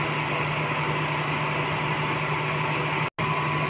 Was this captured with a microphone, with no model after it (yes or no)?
yes